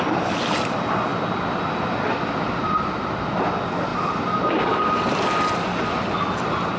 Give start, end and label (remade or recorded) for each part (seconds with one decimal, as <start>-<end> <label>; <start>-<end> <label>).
0.0-1.1 recorded; 1.1-3.4 remade; 3.4-6.8 recorded